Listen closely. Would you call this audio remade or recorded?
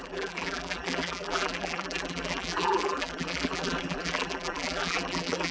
remade